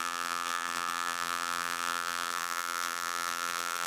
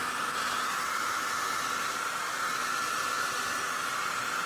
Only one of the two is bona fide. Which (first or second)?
second